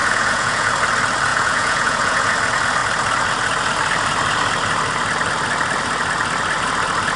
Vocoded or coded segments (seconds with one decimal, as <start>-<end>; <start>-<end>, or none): 0.0-0.7; 1.3-2.3